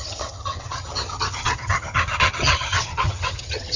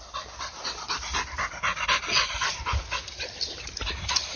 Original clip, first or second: second